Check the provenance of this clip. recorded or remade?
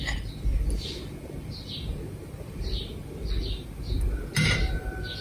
recorded